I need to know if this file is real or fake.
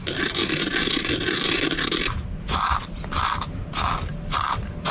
real